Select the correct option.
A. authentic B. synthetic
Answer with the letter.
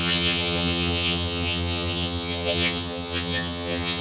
B